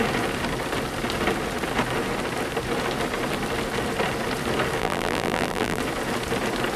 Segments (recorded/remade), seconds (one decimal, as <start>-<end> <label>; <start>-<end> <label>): 0.0-4.8 recorded; 4.8-5.8 remade; 5.8-6.8 recorded